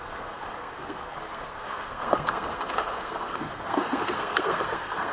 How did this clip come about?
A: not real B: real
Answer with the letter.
A